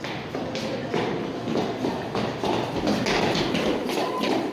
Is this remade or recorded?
recorded